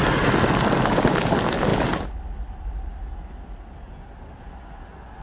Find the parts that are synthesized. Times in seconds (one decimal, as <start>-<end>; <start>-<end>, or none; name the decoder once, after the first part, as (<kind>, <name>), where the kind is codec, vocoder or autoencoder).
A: none